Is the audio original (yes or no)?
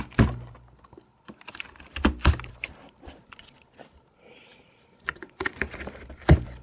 yes